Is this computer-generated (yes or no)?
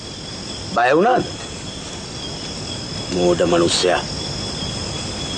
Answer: no